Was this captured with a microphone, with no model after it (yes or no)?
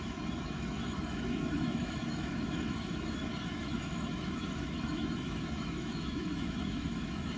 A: no